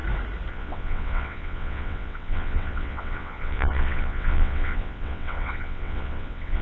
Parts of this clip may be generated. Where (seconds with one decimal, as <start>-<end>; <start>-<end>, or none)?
0.5-6.6